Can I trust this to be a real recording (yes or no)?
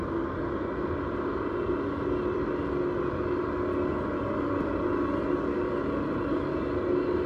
yes